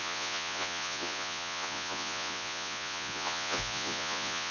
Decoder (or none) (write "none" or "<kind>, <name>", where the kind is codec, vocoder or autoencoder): vocoder, Vocos